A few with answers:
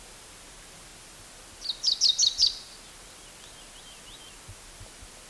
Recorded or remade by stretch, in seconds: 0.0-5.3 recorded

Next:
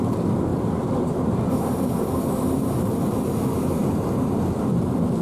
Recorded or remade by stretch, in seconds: 0.0-0.5 recorded; 0.5-1.4 remade; 1.4-2.6 recorded; 2.6-3.3 remade; 3.3-5.2 recorded

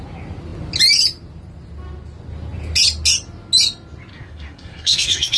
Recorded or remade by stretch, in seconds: 0.0-4.1 recorded; 4.1-5.4 remade

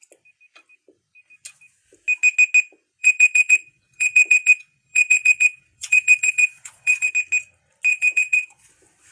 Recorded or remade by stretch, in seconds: 0.0-3.0 recorded; 3.0-7.1 remade; 7.1-7.9 recorded; 7.9-8.7 remade; 8.7-9.1 recorded

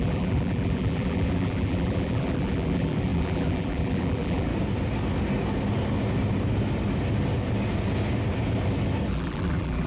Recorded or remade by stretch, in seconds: 0.0-4.5 remade; 4.5-9.1 recorded; 9.1-9.9 remade